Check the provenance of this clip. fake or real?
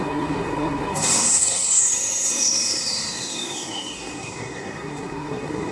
fake